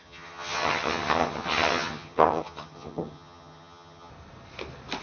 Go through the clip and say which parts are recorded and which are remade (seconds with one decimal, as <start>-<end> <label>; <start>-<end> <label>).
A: 0.0-4.1 remade; 4.1-5.0 recorded